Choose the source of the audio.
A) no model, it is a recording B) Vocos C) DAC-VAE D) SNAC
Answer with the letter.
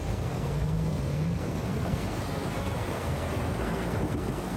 D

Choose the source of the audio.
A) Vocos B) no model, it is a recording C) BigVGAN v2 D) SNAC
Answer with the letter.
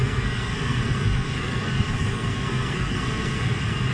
D